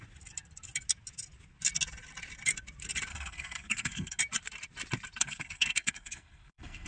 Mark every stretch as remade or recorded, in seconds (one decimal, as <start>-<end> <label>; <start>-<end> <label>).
0.0-3.1 recorded; 3.1-4.2 remade; 4.2-5.2 recorded; 5.2-6.9 remade